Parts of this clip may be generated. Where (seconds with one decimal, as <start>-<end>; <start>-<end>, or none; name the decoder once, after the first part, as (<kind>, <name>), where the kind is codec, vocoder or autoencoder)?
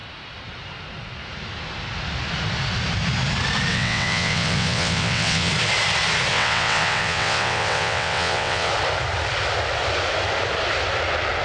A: 3.7-5.5 (vocoder, WaveNeXt); 6.3-8.7